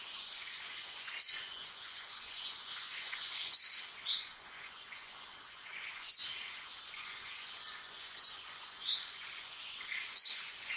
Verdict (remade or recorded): remade